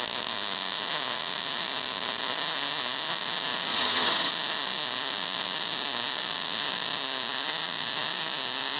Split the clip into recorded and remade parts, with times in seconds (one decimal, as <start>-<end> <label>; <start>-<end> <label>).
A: 0.0-3.7 recorded; 3.7-4.3 remade; 4.3-8.8 recorded

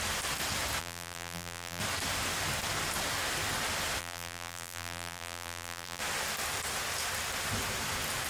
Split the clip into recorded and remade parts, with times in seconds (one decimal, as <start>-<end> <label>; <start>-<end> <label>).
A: 0.0-0.8 recorded; 0.8-1.8 remade; 1.8-4.0 recorded; 4.0-6.0 remade; 6.0-8.3 recorded

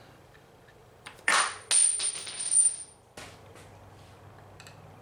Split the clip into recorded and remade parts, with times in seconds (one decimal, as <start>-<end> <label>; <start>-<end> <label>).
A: 0.0-0.8 recorded; 0.8-1.4 remade; 1.4-5.0 recorded

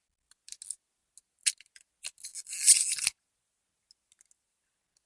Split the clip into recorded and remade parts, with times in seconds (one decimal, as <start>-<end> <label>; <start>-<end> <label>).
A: 0.0-5.1 recorded